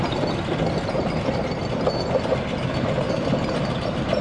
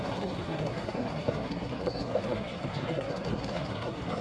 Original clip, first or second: first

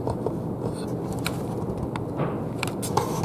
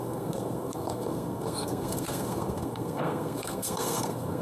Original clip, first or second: first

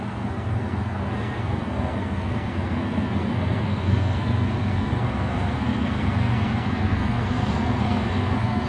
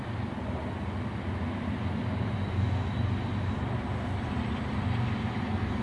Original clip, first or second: second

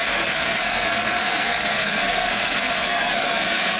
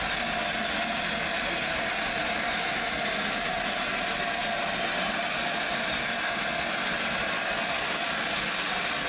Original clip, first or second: second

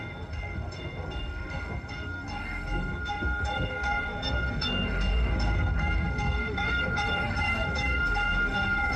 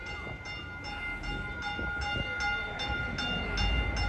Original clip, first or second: second